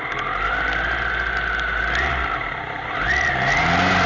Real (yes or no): yes